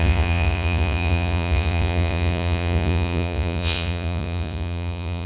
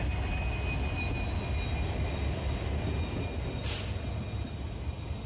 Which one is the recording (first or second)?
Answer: second